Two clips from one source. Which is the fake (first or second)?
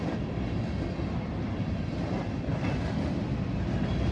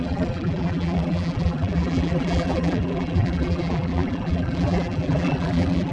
second